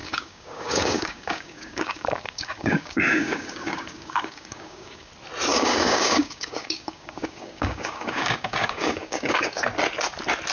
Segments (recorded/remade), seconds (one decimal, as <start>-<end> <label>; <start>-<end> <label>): 0.0-5.1 remade; 5.1-5.5 recorded; 5.5-9.6 remade; 9.6-10.5 recorded